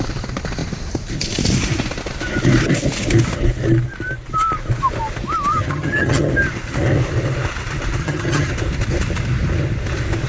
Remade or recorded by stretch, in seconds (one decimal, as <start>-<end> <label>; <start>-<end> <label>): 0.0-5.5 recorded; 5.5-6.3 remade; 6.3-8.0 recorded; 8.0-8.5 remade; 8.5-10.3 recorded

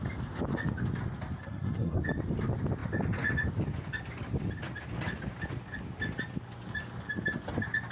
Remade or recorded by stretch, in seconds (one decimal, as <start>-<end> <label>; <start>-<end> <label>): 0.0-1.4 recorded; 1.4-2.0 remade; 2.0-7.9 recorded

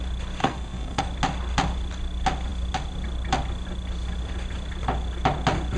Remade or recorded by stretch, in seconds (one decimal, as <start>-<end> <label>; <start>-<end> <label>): 0.0-0.4 recorded; 0.4-1.0 remade; 1.0-5.8 recorded

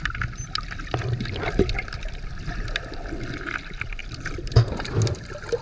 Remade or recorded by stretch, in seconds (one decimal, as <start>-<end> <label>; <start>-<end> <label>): 0.0-5.6 recorded